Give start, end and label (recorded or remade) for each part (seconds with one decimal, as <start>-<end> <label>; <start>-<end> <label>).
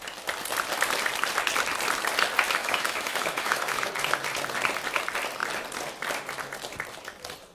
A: 0.0-2.6 recorded; 2.6-3.9 remade; 3.9-7.5 recorded